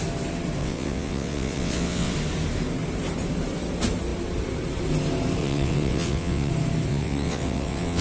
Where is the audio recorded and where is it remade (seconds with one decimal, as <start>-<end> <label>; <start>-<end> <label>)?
0.0-0.6 recorded; 0.6-2.1 remade; 2.1-5.4 recorded; 5.4-6.5 remade; 6.5-6.9 recorded; 6.9-8.0 remade